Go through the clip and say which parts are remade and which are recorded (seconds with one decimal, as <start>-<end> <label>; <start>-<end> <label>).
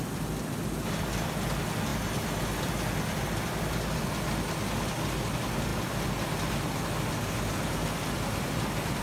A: 0.0-9.0 recorded